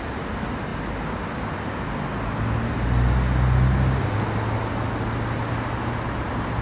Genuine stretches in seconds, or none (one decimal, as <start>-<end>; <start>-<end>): 0.0-6.6